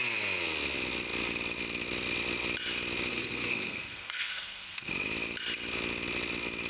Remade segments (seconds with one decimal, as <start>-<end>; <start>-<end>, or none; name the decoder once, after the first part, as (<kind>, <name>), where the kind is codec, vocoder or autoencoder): 3.1-4.9 (codec, SNAC)